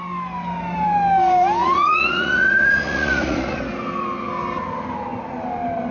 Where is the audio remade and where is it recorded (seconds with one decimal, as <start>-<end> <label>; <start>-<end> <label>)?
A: 0.0-1.6 recorded; 1.6-3.6 remade; 3.6-5.9 recorded